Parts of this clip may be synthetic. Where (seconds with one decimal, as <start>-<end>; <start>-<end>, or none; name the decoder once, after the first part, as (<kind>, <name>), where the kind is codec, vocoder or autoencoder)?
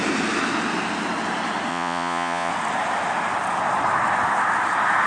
1.7-2.5 (vocoder, Vocos)